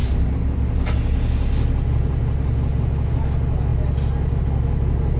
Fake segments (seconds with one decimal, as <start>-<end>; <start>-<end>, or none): none